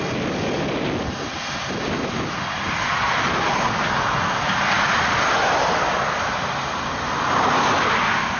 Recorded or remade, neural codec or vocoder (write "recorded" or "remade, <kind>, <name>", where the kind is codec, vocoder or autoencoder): recorded